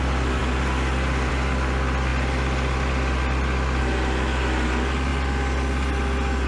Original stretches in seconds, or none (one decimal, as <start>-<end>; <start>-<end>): 0.0-6.5